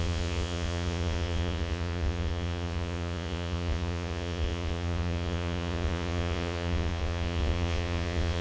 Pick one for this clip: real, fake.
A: fake